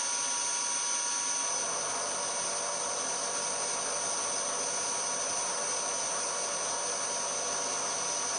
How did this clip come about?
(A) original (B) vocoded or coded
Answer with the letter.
A